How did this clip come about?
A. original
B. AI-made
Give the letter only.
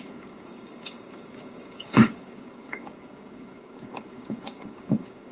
B